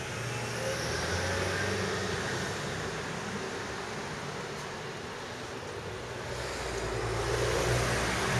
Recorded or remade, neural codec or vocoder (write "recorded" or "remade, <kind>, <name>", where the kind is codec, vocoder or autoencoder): recorded